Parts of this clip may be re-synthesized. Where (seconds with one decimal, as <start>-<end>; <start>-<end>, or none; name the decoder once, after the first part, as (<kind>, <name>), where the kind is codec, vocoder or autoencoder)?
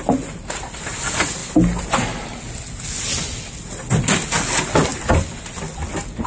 none